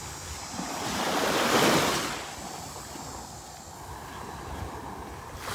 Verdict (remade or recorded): recorded